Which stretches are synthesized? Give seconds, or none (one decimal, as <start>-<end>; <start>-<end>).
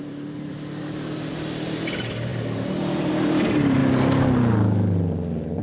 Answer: 0.0-0.5; 1.3-3.8